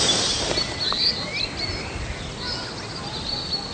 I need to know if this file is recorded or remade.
recorded